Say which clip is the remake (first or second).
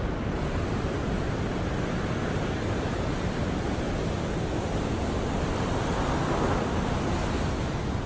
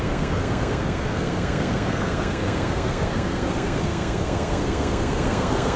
second